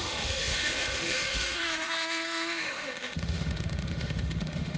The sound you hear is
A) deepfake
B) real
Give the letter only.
A